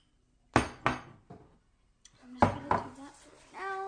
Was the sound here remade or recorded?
recorded